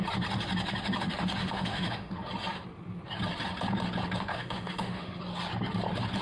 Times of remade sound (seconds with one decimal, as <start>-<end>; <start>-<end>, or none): 1.4-2.1; 4.3-5.2